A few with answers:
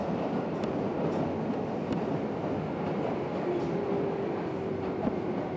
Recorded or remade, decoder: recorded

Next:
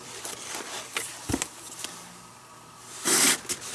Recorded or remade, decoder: recorded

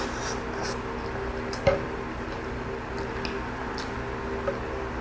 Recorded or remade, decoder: recorded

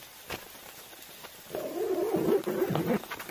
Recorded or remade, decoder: recorded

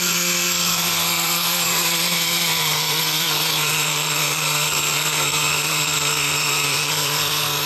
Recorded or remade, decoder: remade, codec, SNAC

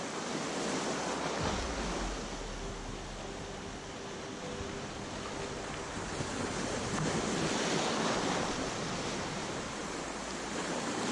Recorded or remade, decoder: recorded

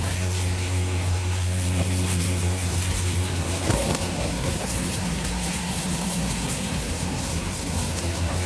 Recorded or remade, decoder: remade, codec, SNAC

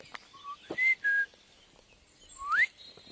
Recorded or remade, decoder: recorded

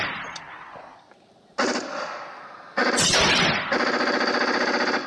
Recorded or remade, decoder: recorded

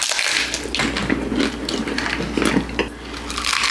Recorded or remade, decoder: recorded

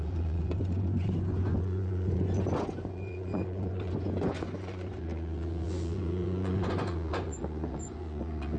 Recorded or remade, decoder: remade, vocoder, Vocos